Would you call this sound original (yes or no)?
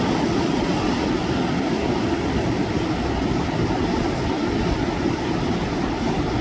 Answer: yes